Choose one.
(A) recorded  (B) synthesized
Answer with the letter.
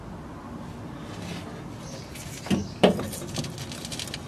A